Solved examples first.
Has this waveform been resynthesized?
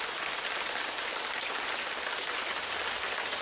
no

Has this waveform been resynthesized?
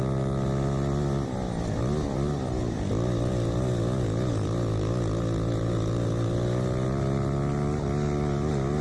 no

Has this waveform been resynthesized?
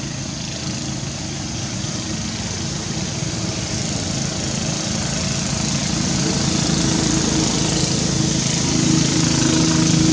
no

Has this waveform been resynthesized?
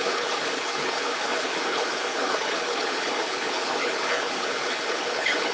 yes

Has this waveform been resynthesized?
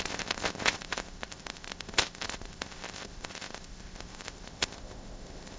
yes